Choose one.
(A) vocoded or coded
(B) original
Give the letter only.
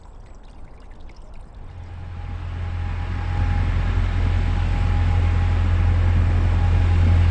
B